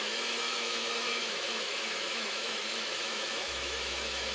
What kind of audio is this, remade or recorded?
remade